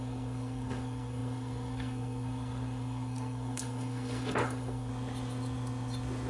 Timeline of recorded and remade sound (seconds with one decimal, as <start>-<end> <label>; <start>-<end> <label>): 0.0-4.9 remade; 4.9-6.3 recorded